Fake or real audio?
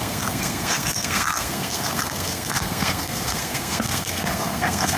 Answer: fake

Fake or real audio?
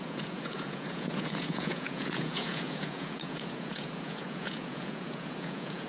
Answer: fake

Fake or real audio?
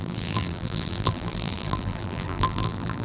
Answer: fake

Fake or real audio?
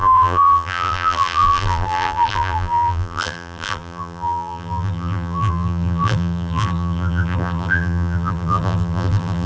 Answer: fake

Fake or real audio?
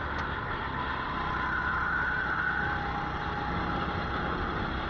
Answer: real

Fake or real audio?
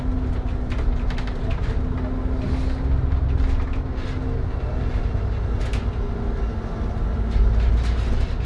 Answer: real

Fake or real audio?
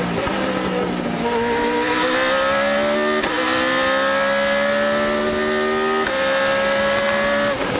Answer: real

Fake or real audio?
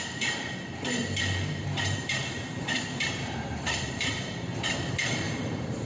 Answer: fake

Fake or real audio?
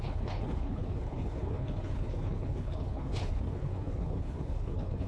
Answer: fake